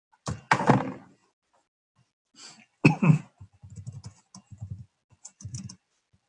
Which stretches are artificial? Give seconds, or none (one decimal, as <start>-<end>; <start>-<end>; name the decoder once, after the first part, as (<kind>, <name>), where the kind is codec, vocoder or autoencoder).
none